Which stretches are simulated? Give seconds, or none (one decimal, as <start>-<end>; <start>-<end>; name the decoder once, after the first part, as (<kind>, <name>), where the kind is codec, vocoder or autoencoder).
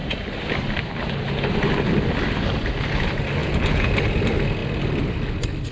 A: 3.4-3.9 (vocoder, Vocos)